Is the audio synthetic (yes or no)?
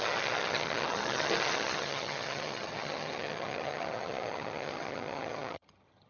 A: yes